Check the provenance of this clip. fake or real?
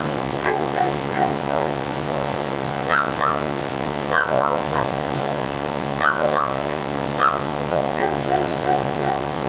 fake